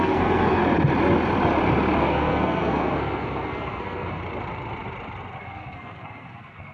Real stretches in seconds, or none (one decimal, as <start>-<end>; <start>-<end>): 0.6-2.0; 4.2-5.4